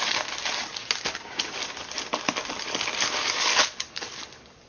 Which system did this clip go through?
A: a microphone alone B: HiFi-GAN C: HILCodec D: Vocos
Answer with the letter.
A